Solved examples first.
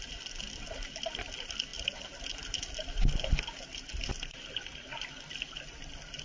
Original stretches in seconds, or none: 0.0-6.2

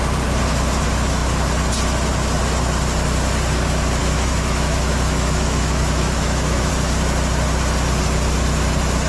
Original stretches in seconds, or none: 0.0-4.0; 6.7-9.1

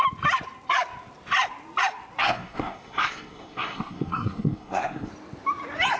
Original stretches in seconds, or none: 0.0-2.2; 5.1-6.0

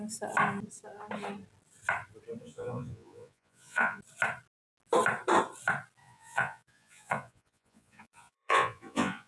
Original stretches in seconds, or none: 0.0-2.4; 4.0-6.0

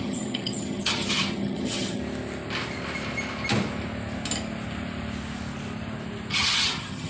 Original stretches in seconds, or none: 2.0-6.3

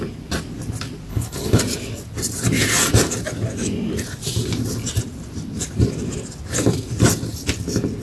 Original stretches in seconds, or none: 0.0-1.1; 1.6-8.0

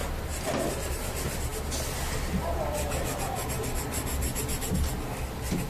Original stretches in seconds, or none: 0.0-5.7